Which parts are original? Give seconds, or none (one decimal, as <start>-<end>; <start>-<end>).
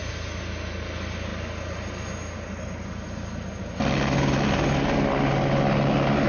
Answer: 0.0-6.3